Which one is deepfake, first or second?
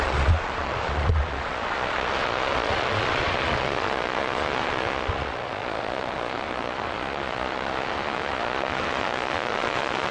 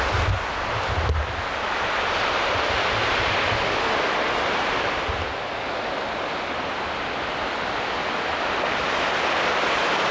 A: first